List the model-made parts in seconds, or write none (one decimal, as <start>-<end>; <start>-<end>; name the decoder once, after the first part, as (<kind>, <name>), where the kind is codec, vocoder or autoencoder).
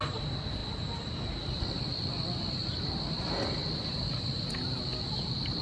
none